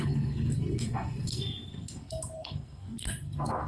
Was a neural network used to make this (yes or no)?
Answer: yes